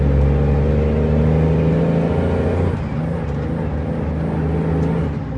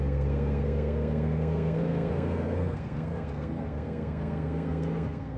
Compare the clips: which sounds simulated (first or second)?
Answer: second